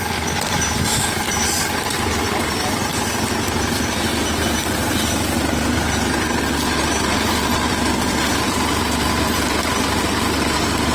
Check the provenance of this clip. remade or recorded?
recorded